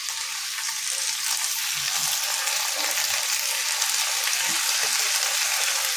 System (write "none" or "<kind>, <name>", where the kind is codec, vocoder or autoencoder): none